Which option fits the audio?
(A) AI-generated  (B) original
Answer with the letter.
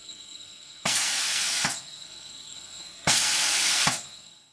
A